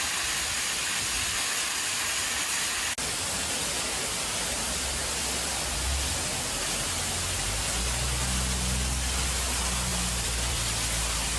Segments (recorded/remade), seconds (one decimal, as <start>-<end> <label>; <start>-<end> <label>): 0.0-0.8 recorded; 0.8-2.6 remade; 2.6-9.9 recorded; 9.9-11.4 remade